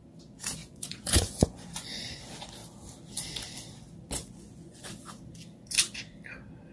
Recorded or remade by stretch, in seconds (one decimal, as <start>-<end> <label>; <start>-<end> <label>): 0.0-0.6 recorded; 0.6-2.2 remade; 2.2-4.2 recorded; 4.2-4.9 remade; 4.9-6.7 recorded